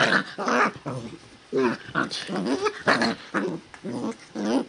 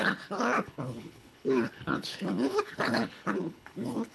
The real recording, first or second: first